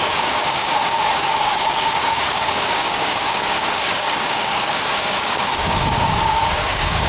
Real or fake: fake